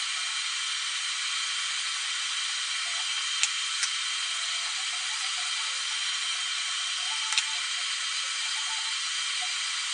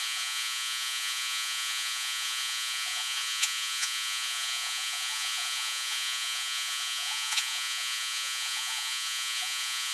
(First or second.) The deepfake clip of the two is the second